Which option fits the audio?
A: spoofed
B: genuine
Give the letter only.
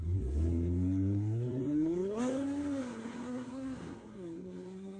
A